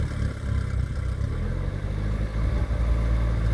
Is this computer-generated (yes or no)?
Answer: no